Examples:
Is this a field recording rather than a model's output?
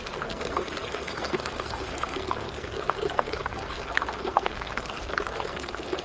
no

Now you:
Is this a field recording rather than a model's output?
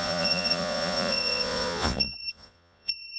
no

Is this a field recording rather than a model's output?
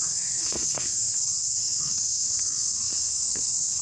no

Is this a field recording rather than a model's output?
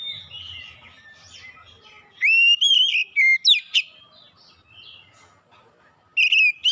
yes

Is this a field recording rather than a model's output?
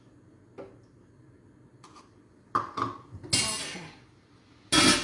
yes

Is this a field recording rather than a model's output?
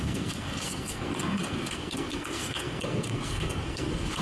no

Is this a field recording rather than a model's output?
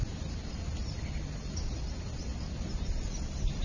yes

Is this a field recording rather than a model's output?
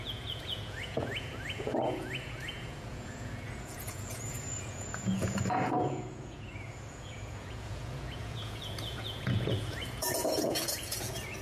no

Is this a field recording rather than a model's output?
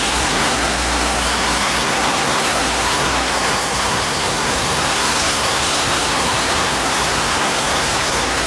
no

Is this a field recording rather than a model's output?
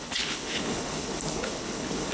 no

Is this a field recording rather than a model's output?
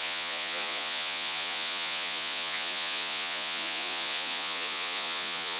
no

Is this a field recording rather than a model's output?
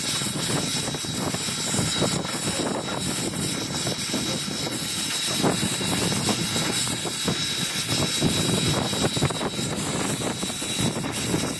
yes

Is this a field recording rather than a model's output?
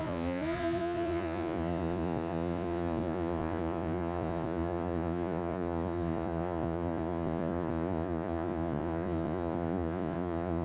no